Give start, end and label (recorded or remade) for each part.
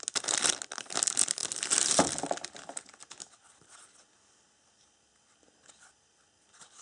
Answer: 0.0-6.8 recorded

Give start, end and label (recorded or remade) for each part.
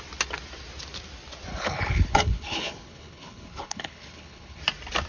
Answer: 0.0-1.5 recorded; 1.5-4.6 remade; 4.6-5.1 recorded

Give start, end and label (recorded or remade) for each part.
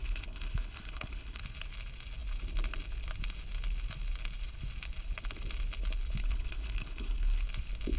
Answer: 0.0-1.4 remade; 1.4-6.2 recorded; 6.2-7.4 remade; 7.4-8.0 recorded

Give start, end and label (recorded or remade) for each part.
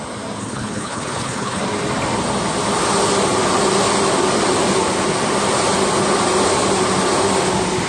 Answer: 0.0-0.4 recorded; 0.4-1.6 remade; 1.6-7.9 recorded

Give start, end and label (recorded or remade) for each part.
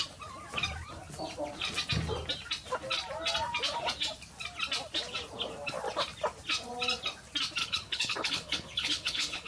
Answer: 0.0-7.6 recorded; 7.6-9.5 remade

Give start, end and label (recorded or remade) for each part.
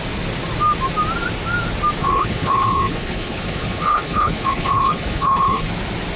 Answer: 0.0-2.0 recorded; 2.0-5.7 remade; 5.7-6.2 recorded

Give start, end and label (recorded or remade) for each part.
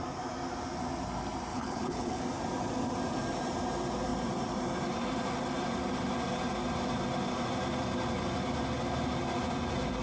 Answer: 0.0-1.5 recorded; 1.5-2.2 remade; 2.2-10.0 recorded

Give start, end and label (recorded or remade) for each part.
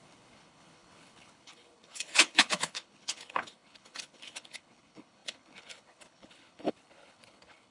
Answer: 0.0-7.7 remade